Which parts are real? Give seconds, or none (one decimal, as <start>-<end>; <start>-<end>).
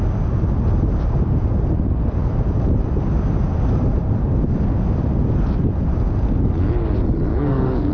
0.0-7.3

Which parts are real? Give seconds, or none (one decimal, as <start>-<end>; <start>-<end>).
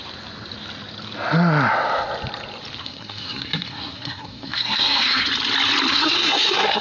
0.0-2.8; 5.3-5.9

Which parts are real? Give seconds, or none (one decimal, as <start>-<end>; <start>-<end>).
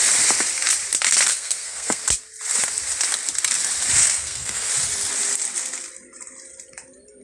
0.0-1.3; 2.0-4.0; 4.7-7.2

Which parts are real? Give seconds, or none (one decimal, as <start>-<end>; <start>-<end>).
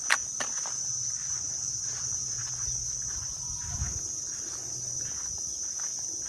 0.0-6.3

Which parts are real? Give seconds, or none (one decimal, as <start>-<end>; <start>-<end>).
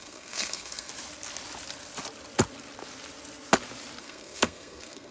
0.9-4.0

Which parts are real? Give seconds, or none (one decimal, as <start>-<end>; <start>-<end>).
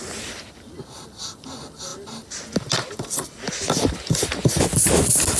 0.0-5.4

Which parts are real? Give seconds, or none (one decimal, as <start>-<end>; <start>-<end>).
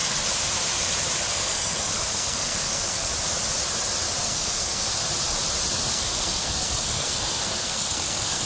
0.0-1.3; 3.1-4.2; 4.9-5.9